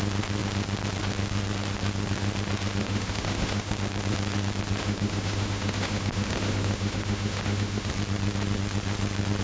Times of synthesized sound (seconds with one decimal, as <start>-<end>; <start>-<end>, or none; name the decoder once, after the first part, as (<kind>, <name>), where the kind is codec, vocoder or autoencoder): 2.8-3.7 (autoencoder, DAC-VAE); 4.8-7.9